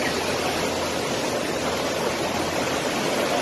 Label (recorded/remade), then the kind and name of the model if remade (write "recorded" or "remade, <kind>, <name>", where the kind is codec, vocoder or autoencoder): recorded